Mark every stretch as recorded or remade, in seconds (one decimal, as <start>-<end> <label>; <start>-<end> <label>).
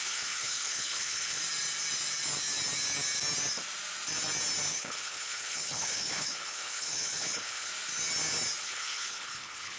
0.0-1.4 remade; 1.4-4.7 recorded; 4.7-7.7 remade; 7.7-8.6 recorded; 8.6-9.8 remade